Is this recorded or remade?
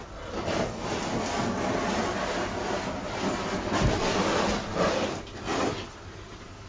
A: recorded